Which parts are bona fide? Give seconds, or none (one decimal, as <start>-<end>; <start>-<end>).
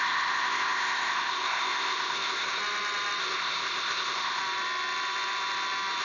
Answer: 2.6-3.2; 4.4-6.0